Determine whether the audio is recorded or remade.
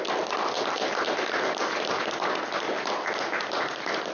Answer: recorded